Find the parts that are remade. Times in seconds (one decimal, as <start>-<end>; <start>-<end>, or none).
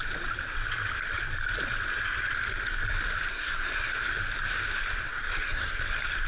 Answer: 3.3-3.9; 5.1-5.8